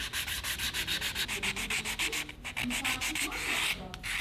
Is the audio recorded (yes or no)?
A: yes